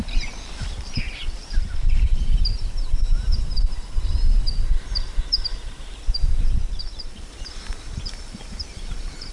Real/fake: fake